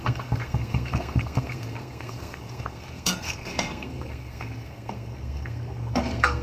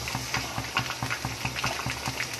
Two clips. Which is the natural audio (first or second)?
second